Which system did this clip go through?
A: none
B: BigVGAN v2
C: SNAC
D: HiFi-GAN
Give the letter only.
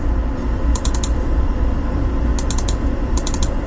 B